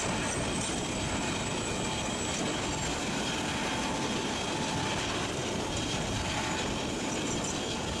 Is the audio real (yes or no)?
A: yes